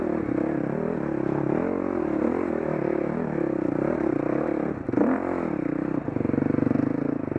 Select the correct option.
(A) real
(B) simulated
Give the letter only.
A